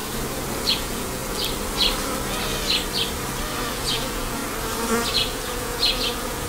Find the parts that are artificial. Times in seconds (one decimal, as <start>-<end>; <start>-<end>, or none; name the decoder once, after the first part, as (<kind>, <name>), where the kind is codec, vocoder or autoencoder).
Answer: 0.7-1.2 (vocoder, Vocos); 3.7-4.4; 5.1-6.5